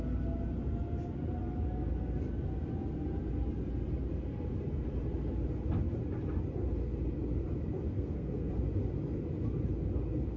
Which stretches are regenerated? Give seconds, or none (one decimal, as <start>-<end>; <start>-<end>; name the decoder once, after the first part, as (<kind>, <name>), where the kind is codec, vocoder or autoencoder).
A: 7.9-8.5 (codec, SNAC)